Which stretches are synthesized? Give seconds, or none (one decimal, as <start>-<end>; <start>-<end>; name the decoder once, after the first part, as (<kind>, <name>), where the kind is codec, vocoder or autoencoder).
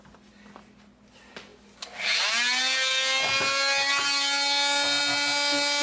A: none